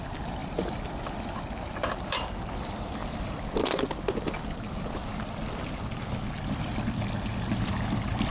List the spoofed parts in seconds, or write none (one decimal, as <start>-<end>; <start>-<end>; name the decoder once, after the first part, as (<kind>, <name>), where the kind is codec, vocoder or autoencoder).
0.4-1.4 (vocoder, BigVGAN v2)

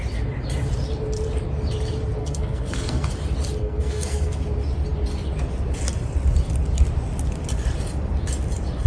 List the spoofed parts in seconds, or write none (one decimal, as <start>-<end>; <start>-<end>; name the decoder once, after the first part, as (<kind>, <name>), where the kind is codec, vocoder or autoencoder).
2.2-3.1 (codec, SNAC); 3.6-4.4

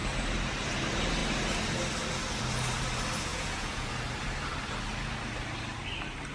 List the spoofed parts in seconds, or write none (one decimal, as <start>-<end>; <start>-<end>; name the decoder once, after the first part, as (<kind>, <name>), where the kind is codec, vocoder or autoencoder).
3.3-3.9 (vocoder, Vocos)

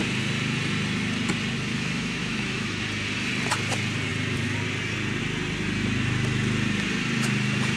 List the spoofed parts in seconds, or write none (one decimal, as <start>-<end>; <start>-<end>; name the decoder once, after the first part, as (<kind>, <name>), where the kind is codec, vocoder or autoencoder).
1.7-2.8 (autoencoder, DAC-VAE)

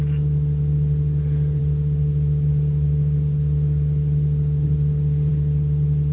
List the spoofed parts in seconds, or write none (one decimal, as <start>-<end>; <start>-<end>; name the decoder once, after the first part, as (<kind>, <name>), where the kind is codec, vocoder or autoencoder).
none

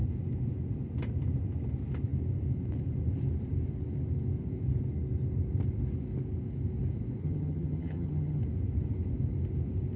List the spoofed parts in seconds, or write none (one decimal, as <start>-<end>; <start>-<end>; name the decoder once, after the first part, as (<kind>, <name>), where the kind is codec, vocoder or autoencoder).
7.2-8.4 (vocoder, HiFi-GAN)